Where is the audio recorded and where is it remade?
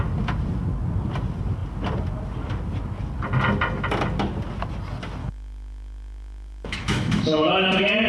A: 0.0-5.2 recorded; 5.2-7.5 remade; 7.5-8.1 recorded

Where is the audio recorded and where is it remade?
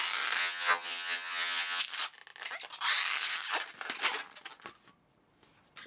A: 0.0-0.4 recorded; 0.4-1.8 remade; 1.8-5.9 recorded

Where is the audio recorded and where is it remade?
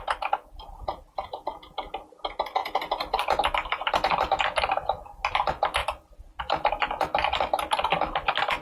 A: 0.0-2.6 recorded; 2.6-3.4 remade; 3.4-5.8 recorded; 5.8-6.7 remade; 6.7-8.6 recorded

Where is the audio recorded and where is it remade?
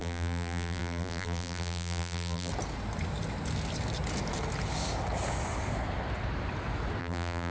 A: 0.0-2.5 remade; 2.5-7.0 recorded; 7.0-7.5 remade